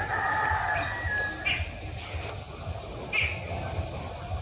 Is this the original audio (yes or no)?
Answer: yes